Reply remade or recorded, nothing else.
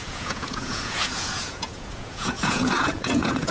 remade